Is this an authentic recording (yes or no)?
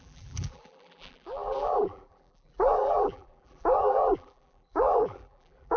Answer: no